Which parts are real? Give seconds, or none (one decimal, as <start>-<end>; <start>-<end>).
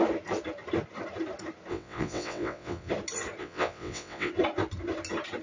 0.0-1.7; 2.9-3.4; 4.3-5.4